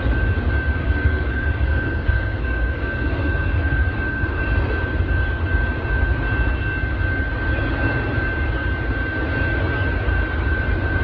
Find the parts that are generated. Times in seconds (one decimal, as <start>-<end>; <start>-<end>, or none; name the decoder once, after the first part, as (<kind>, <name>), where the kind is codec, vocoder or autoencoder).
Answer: 0.8-4.4 (codec, SNAC)